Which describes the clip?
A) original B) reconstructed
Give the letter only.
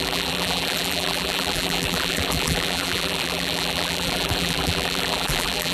B